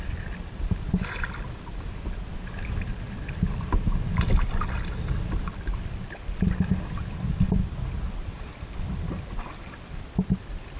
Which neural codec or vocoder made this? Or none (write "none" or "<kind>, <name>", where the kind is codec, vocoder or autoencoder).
none